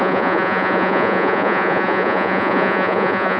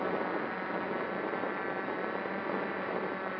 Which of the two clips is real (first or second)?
second